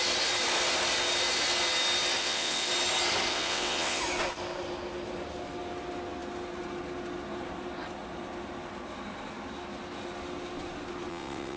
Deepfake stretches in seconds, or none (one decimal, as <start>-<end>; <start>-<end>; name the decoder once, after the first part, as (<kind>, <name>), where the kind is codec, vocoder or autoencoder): 2.2-2.7 (vocoder, WaveNeXt); 3.3-4.0; 11.1-11.6